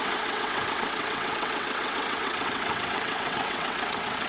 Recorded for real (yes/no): no